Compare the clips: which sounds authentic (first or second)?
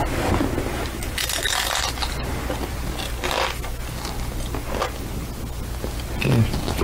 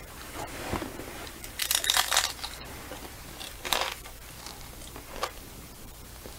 first